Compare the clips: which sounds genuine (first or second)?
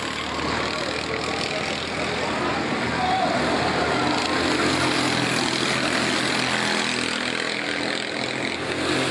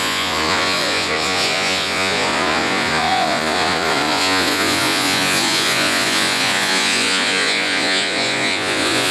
first